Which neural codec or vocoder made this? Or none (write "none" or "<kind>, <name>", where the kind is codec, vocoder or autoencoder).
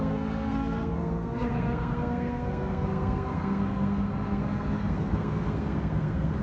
codec, SNAC